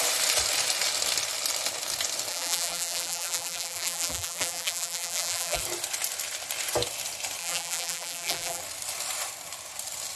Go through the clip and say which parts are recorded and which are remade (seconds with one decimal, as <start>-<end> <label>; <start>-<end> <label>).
0.0-2.3 recorded; 2.3-5.6 remade; 5.6-7.4 recorded; 7.4-8.6 remade; 8.6-10.2 recorded